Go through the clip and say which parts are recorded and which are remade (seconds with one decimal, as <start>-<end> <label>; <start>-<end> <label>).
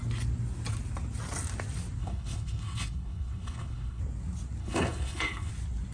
0.0-2.0 recorded; 2.0-4.0 remade; 4.0-4.6 recorded; 4.6-5.5 remade; 5.5-5.9 recorded